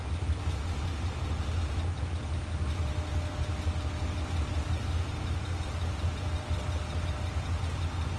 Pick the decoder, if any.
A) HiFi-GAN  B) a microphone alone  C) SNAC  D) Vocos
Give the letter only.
B